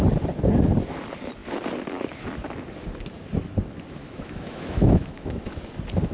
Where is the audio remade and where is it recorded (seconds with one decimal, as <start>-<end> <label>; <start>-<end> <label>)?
0.0-4.0 recorded; 4.0-5.6 remade; 5.6-6.1 recorded